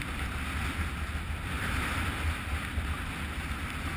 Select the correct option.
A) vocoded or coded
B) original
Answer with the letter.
B